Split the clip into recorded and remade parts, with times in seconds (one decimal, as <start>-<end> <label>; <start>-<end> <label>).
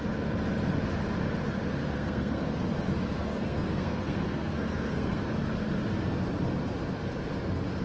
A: 0.0-1.8 recorded; 1.8-2.5 remade; 2.5-3.2 recorded; 3.2-5.2 remade; 5.2-7.8 recorded